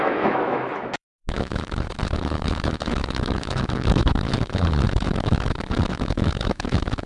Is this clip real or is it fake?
fake